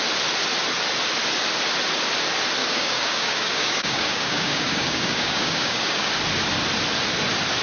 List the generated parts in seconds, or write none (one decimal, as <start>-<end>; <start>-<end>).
2.6-6.1